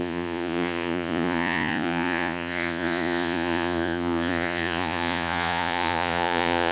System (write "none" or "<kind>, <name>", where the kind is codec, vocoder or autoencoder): vocoder, Vocos